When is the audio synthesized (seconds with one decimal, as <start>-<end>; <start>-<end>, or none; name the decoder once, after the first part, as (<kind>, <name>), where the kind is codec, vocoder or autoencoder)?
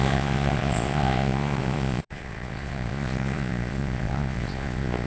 0.0-5.1 (vocoder, Vocos)